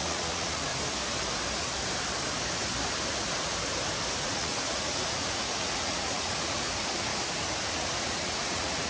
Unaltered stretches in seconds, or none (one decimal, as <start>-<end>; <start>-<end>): 0.7-4.2; 7.1-7.7